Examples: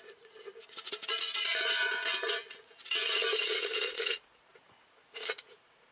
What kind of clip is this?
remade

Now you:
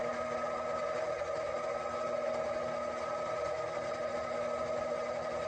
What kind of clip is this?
recorded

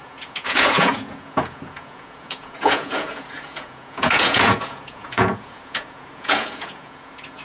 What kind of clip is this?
remade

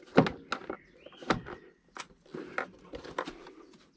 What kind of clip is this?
recorded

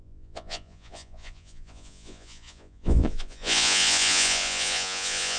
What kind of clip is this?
remade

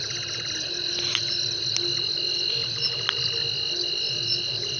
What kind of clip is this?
recorded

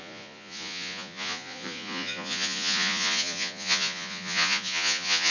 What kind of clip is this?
remade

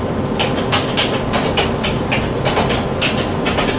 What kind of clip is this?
recorded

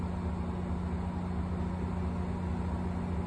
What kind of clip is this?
recorded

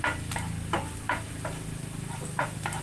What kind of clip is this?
recorded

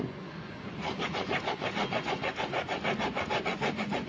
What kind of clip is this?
remade